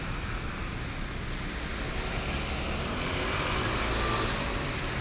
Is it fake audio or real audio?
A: real